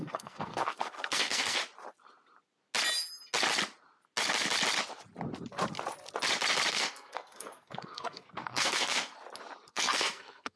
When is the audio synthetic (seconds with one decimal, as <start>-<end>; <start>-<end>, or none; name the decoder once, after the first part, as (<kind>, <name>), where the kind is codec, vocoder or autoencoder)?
0.0-1.6 (codec, SNAC); 6.7-9.1; 9.7-10.6

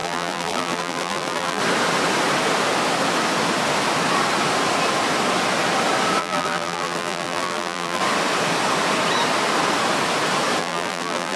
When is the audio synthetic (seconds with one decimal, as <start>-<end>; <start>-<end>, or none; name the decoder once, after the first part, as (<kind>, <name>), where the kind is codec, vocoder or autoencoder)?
0.0-1.6 (vocoder, BigVGAN v2); 6.2-8.0; 10.6-11.4